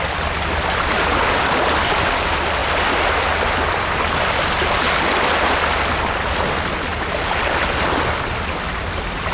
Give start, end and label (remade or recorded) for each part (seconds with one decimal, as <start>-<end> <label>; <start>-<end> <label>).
0.0-9.3 recorded